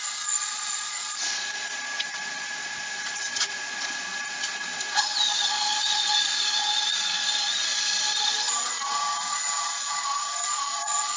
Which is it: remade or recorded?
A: remade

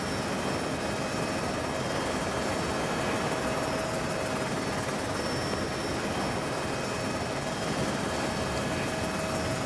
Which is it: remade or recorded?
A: recorded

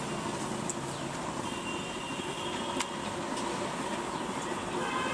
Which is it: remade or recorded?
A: recorded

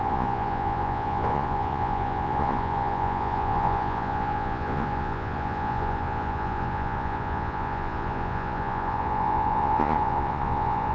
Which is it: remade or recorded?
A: remade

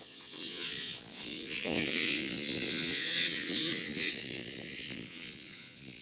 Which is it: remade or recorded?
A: remade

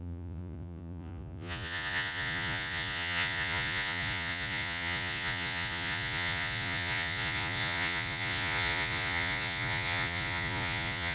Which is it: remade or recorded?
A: remade